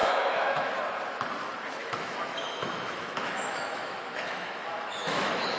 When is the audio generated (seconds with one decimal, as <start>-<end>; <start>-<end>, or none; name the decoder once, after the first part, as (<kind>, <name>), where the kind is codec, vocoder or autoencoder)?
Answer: 0.0-0.8 (autoencoder, DAC-VAE); 1.8-5.6